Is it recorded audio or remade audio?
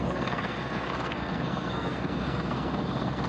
remade